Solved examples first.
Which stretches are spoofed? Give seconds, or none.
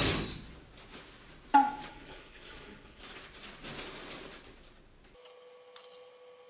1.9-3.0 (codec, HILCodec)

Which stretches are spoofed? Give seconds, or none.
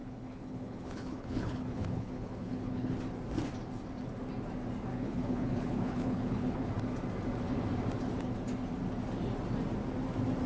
0.0-2.9 (codec, HILCodec); 4.9-6.7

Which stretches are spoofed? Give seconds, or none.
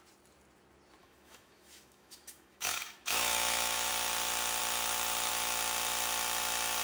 1.0-3.9 (autoencoder, DAC-VAE)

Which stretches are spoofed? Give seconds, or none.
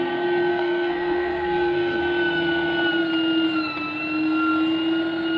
0.5-2.0 (codec, SNAC)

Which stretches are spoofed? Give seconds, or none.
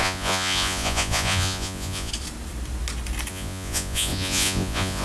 0.0-2.1 (vocoder, Vocos); 3.3-5.0